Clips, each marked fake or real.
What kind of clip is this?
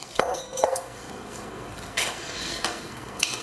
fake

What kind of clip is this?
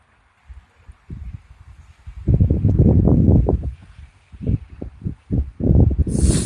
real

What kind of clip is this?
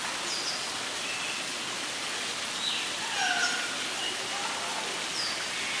real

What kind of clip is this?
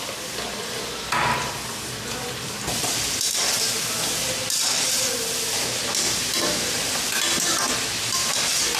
real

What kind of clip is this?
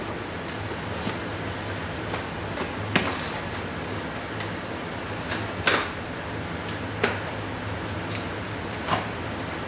real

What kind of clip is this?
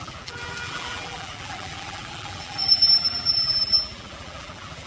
fake